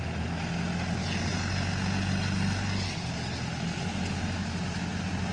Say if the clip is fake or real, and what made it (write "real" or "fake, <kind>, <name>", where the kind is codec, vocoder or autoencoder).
real